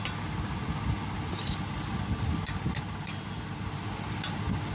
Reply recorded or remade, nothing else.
recorded